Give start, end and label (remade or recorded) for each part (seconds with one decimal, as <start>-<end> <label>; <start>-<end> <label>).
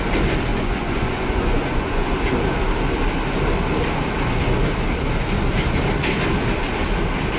0.0-0.5 recorded; 0.5-2.1 remade; 2.1-7.4 recorded